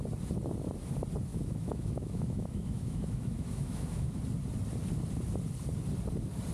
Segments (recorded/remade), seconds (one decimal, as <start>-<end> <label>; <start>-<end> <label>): 0.0-1.3 recorded; 1.3-4.2 remade; 4.2-6.5 recorded